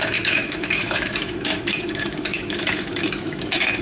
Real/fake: fake